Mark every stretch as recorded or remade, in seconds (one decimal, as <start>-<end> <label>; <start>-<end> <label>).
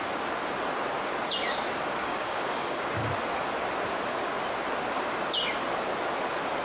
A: 0.0-2.0 recorded; 2.0-2.8 remade; 2.8-6.6 recorded